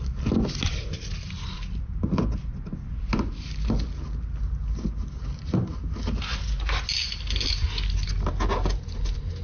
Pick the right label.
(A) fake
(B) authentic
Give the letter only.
B